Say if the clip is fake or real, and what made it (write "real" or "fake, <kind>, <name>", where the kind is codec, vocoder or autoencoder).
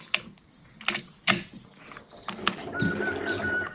real